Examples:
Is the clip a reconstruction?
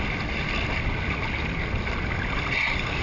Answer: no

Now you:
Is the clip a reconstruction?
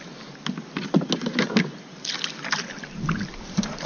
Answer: no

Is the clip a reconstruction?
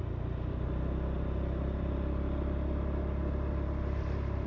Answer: no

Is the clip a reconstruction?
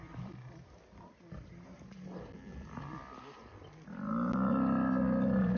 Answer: no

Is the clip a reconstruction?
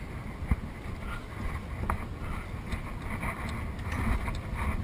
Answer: no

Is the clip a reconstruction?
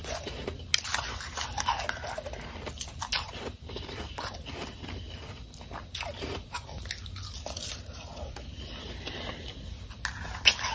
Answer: no